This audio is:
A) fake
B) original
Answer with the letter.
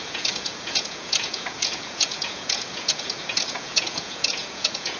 A